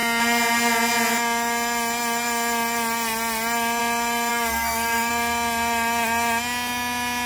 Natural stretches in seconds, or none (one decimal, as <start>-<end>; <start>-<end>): 0.0-4.3; 5.1-7.3

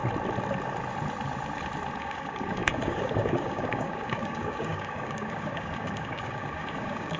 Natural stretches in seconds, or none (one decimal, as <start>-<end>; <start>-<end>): 0.0-2.0

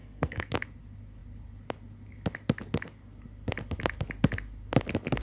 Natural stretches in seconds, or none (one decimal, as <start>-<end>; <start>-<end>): 0.5-5.2

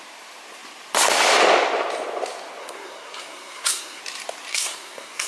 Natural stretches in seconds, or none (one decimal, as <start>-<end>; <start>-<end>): 0.0-2.6; 4.0-4.5

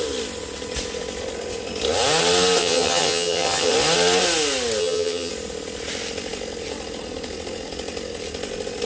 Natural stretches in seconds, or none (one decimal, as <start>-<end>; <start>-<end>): 0.0-2.6; 3.7-4.8; 5.3-8.8

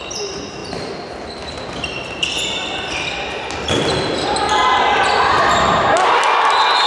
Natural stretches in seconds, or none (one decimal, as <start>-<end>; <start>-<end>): 0.0-6.9

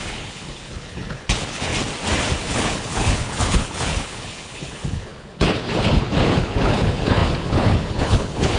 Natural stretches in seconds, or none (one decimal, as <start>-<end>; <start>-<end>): 1.7-2.4

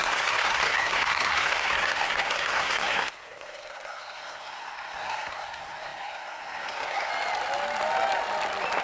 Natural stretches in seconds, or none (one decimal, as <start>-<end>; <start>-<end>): 7.1-8.8